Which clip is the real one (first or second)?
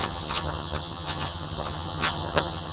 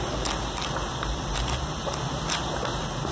second